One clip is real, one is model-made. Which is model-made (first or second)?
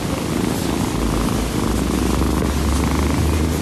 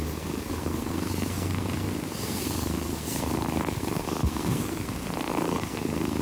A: second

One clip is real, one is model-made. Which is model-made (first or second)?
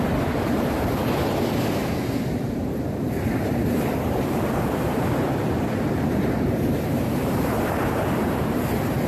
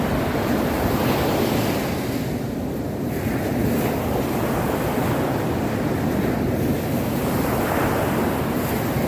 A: first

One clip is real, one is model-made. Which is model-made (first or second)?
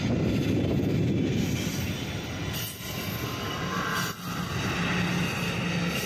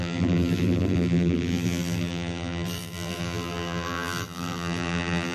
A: second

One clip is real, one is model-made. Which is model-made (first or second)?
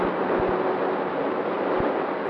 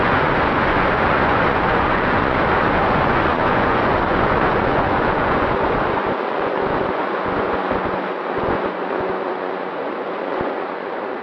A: second